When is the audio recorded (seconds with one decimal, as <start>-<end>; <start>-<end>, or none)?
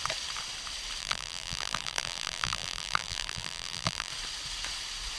0.0-1.0; 4.1-5.2